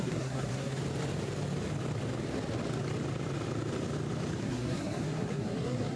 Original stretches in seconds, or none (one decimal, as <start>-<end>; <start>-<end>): 0.8-4.4

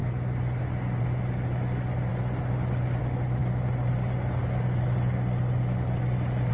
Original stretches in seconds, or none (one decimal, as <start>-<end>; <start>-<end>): 0.0-6.5

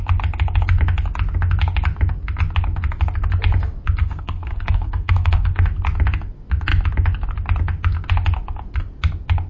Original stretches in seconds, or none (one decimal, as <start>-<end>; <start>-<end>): 0.0-4.0; 5.6-9.5

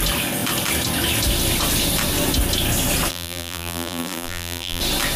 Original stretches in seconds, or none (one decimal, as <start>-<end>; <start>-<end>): 0.0-3.1; 4.8-5.2

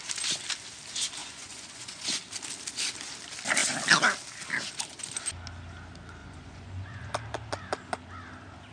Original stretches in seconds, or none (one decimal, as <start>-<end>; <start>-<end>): 0.0-1.2; 2.2-6.2; 7.1-8.7